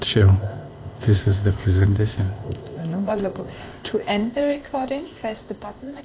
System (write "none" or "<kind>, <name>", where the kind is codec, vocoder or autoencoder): codec, ZipCodec